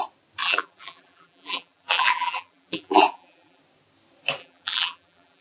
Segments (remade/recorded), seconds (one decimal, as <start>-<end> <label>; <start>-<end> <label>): 0.0-0.4 recorded; 0.4-3.6 remade; 3.6-4.4 recorded; 4.4-5.4 remade